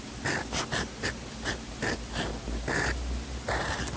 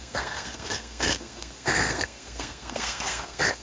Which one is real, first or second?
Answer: first